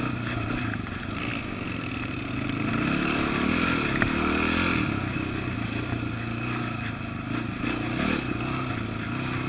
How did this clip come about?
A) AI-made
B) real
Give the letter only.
B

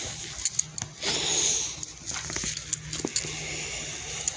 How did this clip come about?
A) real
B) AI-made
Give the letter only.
A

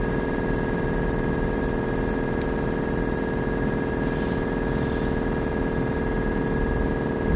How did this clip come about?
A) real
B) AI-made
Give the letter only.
A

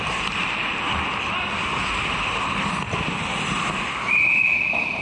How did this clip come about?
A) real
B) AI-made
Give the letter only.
B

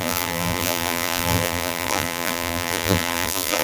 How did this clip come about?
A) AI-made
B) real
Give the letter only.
A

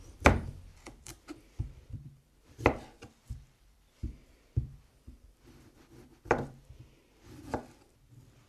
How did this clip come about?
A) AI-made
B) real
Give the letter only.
A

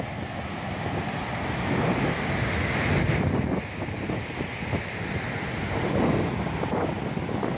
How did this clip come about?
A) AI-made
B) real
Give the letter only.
B